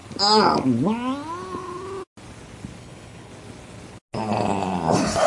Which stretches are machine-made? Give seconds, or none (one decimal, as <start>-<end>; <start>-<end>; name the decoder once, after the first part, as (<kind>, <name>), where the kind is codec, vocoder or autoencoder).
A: 2.8-3.3 (codec, HILCodec)